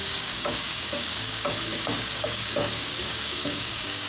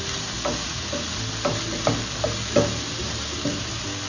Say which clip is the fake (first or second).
first